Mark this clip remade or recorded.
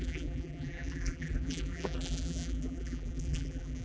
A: remade